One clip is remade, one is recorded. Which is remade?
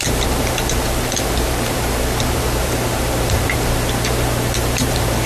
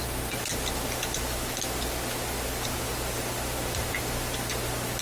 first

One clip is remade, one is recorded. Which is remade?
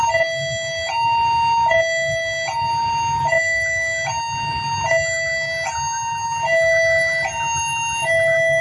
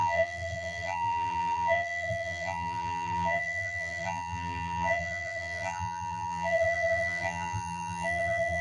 second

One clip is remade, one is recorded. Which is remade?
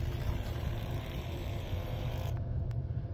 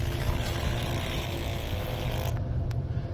first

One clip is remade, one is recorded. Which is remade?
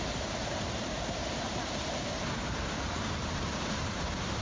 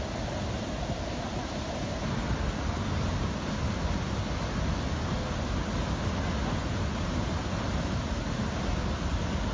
first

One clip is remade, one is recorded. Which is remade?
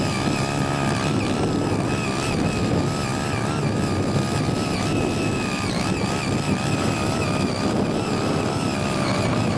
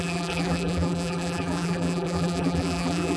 second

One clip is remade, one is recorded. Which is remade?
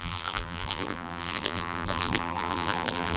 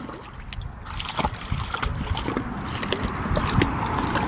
first